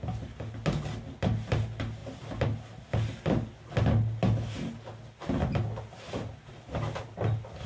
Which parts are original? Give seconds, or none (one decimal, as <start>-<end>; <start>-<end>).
0.0-7.7